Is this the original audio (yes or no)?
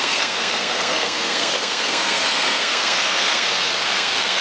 no